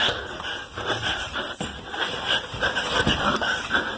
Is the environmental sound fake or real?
fake